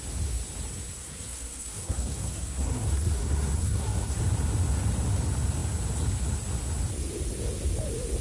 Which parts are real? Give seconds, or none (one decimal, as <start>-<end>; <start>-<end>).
0.0-1.0; 4.2-8.2